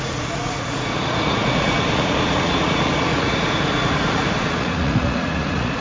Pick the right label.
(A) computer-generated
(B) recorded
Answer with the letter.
A